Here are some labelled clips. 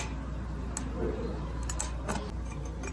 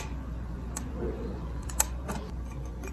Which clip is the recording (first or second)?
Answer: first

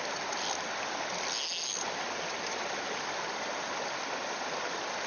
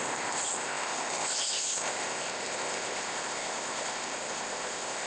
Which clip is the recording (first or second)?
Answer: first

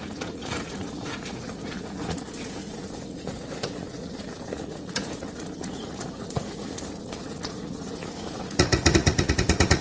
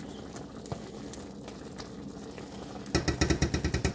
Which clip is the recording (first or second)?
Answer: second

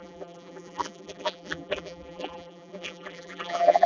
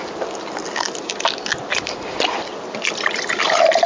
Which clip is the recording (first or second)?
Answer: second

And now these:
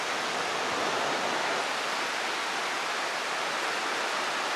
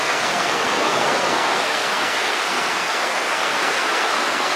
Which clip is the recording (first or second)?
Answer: first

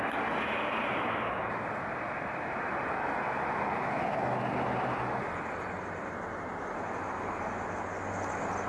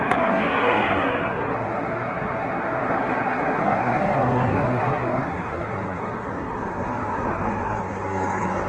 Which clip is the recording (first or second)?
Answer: first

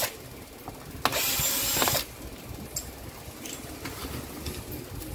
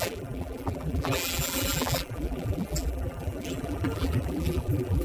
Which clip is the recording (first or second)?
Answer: first